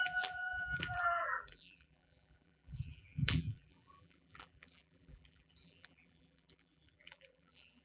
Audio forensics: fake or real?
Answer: fake